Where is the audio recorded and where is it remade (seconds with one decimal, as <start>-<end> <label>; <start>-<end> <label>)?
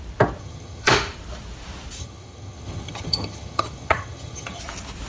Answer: 0.0-0.4 recorded; 0.4-0.9 remade; 0.9-2.0 recorded; 2.0-4.6 remade; 4.6-5.1 recorded